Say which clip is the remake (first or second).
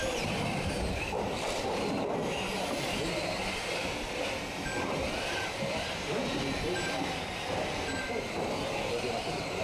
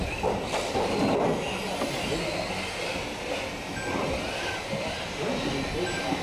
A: first